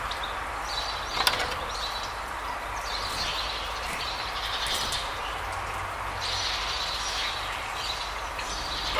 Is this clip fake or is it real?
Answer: fake